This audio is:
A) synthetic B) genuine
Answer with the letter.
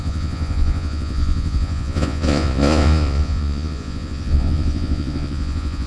A